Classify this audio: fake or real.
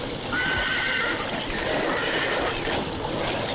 real